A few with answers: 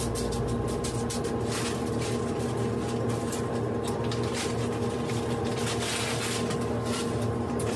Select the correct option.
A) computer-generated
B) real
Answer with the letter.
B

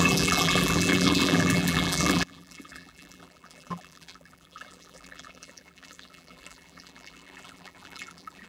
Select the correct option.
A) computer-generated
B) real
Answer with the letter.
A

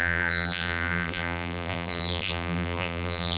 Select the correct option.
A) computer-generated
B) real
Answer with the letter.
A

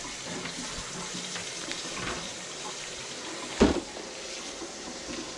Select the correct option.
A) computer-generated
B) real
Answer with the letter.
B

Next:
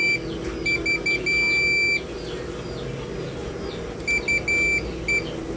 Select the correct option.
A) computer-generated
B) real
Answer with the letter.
B